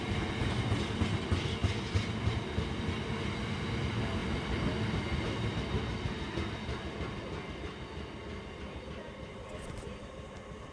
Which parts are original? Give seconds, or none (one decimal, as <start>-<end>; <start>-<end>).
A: 0.0-10.7